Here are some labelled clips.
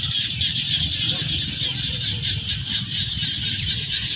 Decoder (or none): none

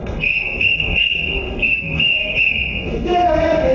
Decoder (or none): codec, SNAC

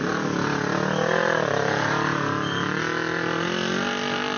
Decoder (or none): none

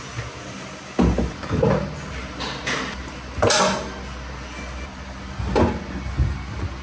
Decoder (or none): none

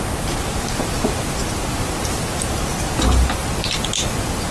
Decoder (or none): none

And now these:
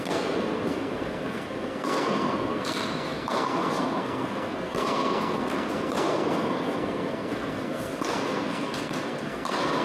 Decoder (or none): codec, SNAC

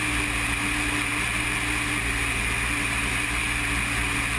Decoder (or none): none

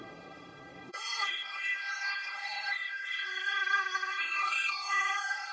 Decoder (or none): codec, SNAC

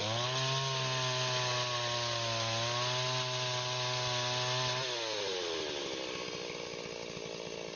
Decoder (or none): none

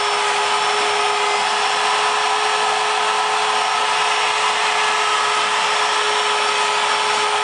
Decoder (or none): none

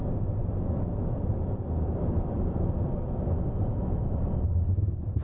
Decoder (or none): none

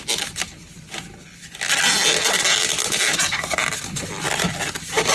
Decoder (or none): none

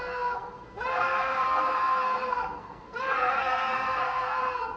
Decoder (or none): codec, SNAC